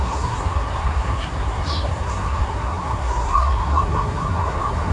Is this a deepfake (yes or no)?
yes